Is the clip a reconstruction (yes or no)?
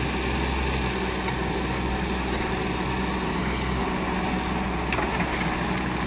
no